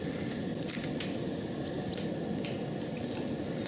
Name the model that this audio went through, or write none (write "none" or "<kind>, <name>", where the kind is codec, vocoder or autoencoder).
none